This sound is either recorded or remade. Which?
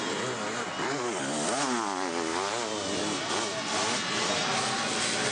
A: recorded